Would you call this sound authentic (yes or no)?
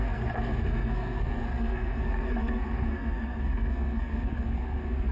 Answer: no